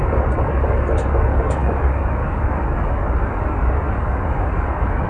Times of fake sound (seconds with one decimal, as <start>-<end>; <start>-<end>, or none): 0.0-5.1

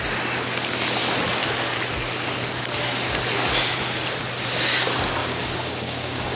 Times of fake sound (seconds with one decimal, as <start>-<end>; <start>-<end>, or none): 5.2-6.3

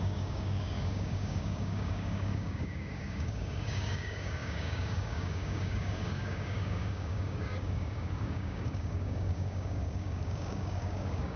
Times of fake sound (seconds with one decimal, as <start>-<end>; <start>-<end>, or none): 0.0-11.4

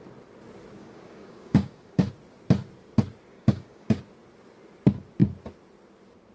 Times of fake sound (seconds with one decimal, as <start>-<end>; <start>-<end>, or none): 0.8-2.1; 3.3-4.0

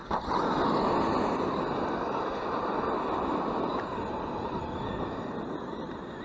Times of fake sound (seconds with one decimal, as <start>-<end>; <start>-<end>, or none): none